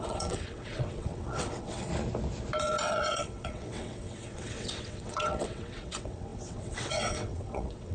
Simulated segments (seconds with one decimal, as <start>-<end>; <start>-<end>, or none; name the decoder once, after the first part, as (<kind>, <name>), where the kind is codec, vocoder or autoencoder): 0.0-1.9 (vocoder, WaveNeXt); 2.6-7.9